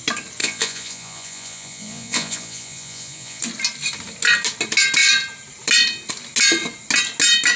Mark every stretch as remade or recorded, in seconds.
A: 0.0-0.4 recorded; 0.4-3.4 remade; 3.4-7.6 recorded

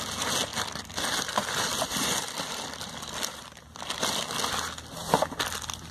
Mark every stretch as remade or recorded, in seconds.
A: 0.0-0.5 recorded; 0.5-4.0 remade; 4.0-5.9 recorded